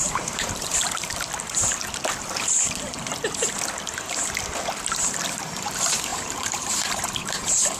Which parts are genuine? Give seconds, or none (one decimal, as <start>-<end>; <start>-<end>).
0.7-5.4

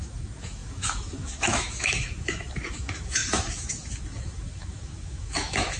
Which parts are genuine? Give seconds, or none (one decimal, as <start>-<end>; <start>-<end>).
none

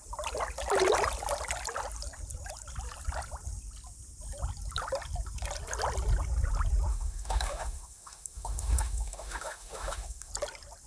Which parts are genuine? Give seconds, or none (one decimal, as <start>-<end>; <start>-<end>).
0.0-6.9; 10.3-10.9